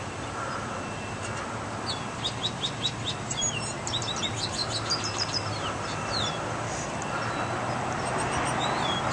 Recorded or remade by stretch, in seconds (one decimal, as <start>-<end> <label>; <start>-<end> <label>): 0.0-9.1 recorded